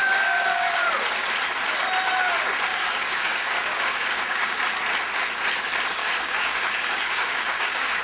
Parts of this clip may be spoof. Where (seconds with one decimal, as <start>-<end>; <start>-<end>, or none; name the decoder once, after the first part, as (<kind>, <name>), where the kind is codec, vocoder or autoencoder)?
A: 0.0-0.9 (codec, DAC); 2.7-4.6; 6.0-8.0